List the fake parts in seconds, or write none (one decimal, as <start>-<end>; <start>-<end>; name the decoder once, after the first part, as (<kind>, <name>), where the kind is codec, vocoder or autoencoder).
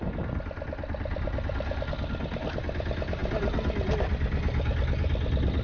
none